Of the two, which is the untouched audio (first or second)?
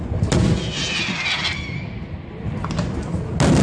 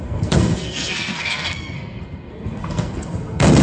first